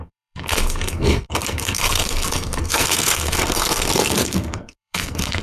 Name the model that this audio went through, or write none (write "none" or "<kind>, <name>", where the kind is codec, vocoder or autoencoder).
codec, SNAC